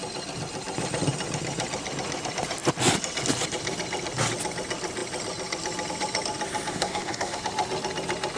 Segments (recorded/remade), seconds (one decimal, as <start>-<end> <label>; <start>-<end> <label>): 0.0-6.7 recorded; 6.7-7.4 remade; 7.4-8.4 recorded